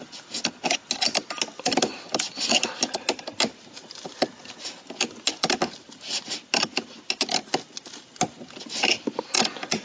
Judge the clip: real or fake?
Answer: real